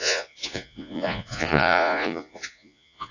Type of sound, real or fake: fake